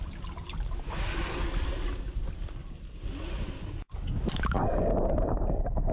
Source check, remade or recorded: recorded